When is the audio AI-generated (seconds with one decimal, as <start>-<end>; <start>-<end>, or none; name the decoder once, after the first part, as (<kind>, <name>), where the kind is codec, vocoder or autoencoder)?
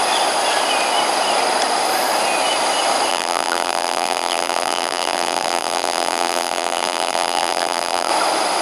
3.1-8.1 (vocoder, BigVGAN v2)